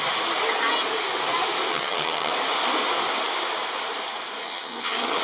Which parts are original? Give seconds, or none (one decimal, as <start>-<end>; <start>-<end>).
0.0-1.7; 2.3-4.4